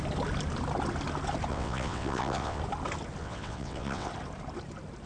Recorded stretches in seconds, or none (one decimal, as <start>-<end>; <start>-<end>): 0.0-1.5; 2.6-3.2; 4.1-5.1